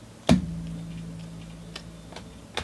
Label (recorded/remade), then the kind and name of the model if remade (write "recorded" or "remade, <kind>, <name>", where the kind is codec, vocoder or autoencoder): recorded